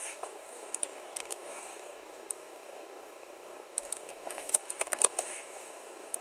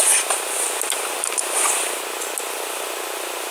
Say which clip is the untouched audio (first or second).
second